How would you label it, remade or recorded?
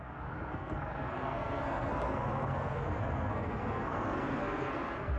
remade